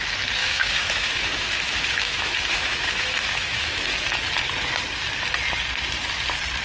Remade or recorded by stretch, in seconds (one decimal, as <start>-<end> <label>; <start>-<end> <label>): 0.0-0.4 recorded; 0.4-3.8 remade; 3.8-6.6 recorded